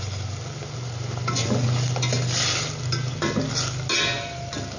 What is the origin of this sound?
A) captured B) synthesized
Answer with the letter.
A